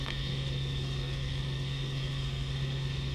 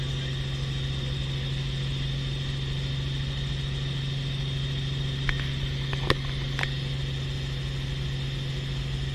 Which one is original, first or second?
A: second